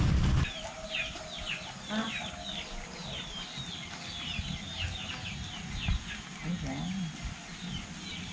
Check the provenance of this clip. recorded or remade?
recorded